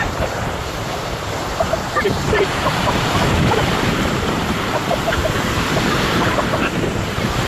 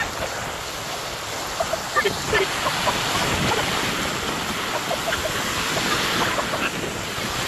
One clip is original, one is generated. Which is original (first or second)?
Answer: second